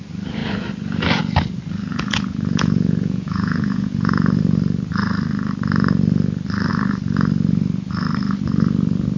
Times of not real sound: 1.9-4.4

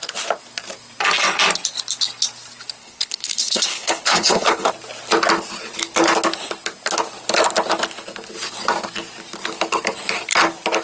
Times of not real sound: 2.8-4.7

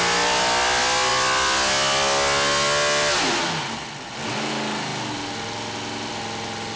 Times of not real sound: none

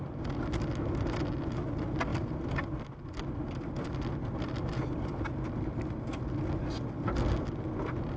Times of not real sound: 2.1-2.8

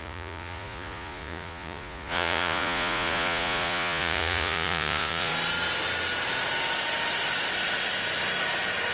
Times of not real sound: 0.0-5.3

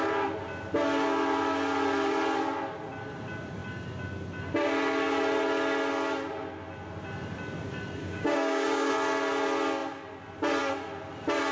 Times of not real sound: 8.0-8.9

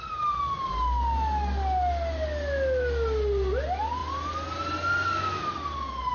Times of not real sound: none